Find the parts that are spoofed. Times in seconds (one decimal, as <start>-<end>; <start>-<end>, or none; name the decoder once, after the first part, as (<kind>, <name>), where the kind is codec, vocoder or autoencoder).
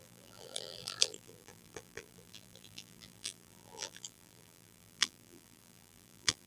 0.0-6.5 (vocoder, BigVGAN v2)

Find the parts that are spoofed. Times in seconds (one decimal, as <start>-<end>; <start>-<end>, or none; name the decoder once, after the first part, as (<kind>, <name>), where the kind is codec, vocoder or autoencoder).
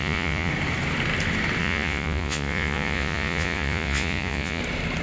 0.0-0.5 (vocoder, Vocos); 1.6-4.6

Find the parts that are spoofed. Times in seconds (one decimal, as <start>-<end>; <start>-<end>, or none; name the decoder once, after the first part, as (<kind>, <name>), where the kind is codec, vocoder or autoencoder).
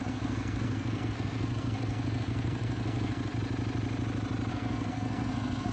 0.0-3.3 (codec, SNAC); 4.5-5.7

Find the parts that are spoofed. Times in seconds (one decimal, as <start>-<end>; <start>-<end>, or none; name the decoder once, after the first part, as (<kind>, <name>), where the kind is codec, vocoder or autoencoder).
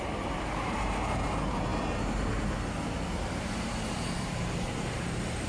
0.0-1.7 (vocoder, BigVGAN v2); 3.3-5.5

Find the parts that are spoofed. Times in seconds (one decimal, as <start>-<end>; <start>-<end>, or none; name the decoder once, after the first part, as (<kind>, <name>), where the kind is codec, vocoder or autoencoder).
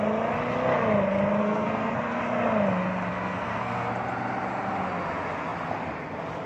1.4-2.2 (codec, SNAC); 3.1-3.9